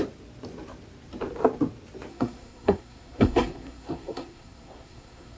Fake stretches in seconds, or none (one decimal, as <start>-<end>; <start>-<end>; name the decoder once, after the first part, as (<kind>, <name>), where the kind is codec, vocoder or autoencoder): 2.1-5.4 (codec, SNAC)